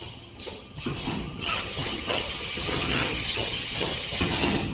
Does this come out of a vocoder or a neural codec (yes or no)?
yes